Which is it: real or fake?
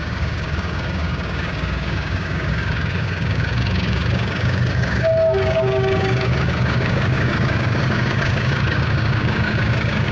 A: fake